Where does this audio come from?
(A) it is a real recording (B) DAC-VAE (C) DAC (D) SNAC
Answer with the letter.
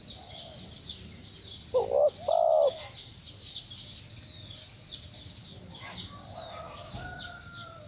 A